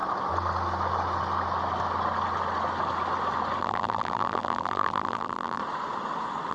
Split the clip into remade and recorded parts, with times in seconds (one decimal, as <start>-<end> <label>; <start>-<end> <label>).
0.0-3.6 recorded; 3.6-5.6 remade; 5.6-6.5 recorded